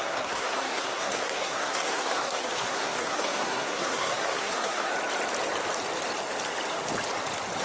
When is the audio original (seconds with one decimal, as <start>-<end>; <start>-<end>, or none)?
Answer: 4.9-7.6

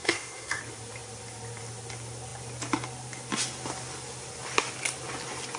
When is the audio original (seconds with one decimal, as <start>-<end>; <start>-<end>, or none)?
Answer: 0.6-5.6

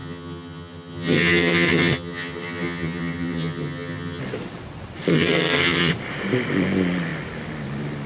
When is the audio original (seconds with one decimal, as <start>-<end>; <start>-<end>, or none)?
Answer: 4.2-5.1; 5.9-8.1

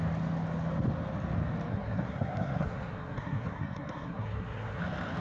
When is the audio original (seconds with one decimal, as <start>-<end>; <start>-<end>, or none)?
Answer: 0.0-1.7; 4.8-5.2

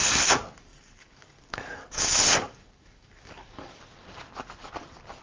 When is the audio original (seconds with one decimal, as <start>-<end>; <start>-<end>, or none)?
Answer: 0.0-0.7; 3.8-5.2